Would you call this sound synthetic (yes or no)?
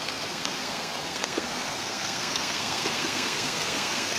yes